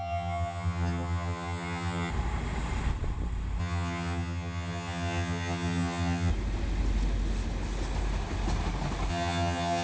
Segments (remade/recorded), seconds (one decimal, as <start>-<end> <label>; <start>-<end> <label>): 0.0-2.1 remade; 2.1-3.6 recorded; 3.6-6.3 remade; 6.3-9.1 recorded; 9.1-9.8 remade